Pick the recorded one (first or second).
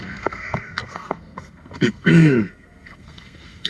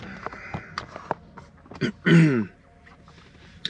second